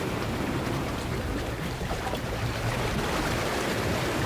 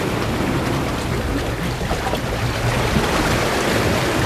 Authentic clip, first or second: second